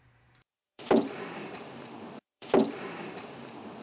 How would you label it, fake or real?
fake